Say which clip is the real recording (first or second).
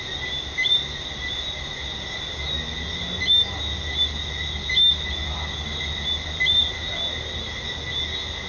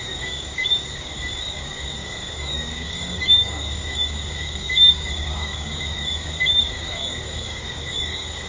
first